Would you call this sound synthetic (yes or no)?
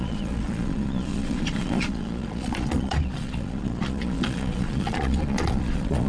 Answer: yes